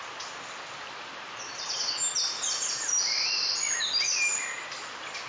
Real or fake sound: real